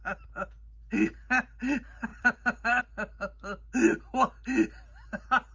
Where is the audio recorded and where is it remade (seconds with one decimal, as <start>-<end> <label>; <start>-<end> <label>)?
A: 0.0-2.1 recorded; 2.1-2.8 remade; 2.8-5.5 recorded